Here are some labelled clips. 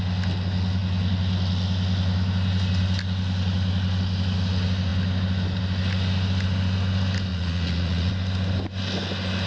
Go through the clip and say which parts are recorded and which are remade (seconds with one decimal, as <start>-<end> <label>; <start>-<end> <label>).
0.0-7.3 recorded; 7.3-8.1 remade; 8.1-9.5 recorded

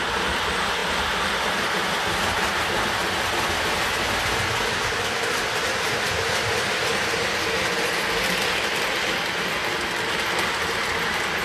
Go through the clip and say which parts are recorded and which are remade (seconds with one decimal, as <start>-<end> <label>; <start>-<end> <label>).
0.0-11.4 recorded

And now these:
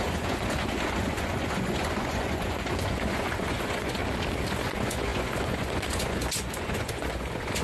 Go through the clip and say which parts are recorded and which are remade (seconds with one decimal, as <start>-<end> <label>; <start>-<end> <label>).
0.0-4.0 remade; 4.0-4.5 recorded; 4.5-7.6 remade